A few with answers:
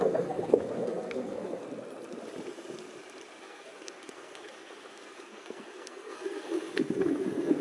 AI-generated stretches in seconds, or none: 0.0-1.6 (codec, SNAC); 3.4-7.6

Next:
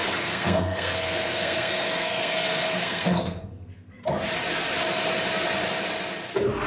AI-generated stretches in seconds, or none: 0.0-4.0 (codec, SNAC)

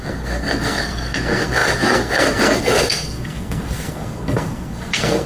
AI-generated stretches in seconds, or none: 0.0-5.3 (codec, SNAC)

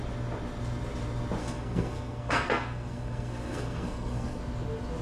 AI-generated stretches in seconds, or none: 1.4-4.4 (codec, SNAC)

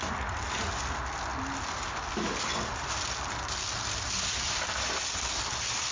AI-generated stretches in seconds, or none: none

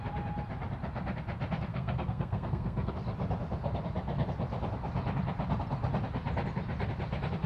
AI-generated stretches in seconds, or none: 1.7-2.9 (codec, SNAC)

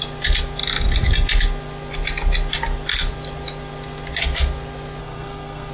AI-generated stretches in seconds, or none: 5.0-5.7 (codec, SNAC)

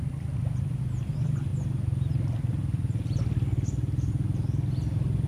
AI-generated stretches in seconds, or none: none